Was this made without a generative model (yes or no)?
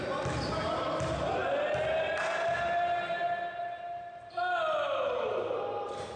yes